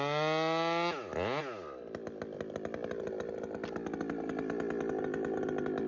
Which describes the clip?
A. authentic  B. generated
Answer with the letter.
A